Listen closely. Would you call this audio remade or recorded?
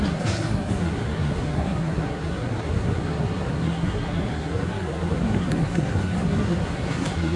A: remade